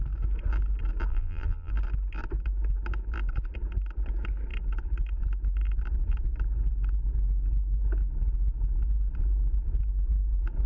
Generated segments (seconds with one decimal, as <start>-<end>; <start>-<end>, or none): 1.1-1.7